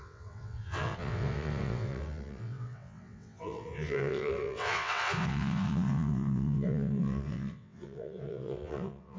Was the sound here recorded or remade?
remade